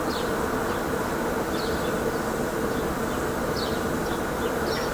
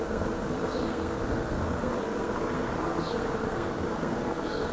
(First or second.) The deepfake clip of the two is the second